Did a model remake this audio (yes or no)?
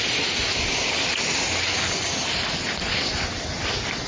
no